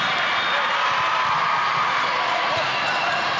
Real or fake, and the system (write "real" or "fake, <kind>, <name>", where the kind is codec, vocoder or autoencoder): real